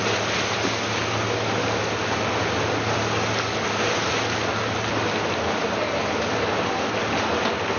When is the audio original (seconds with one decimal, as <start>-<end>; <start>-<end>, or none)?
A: 0.0-7.8